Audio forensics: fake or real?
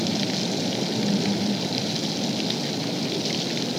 real